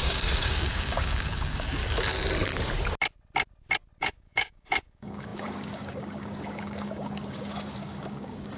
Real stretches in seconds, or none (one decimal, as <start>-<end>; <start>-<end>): 1.8-4.0